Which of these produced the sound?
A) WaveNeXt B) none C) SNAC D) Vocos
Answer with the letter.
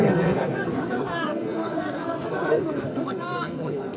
C